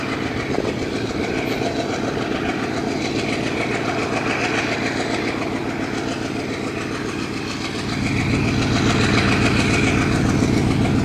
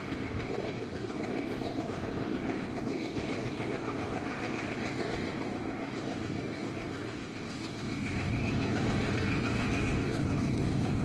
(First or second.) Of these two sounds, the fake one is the second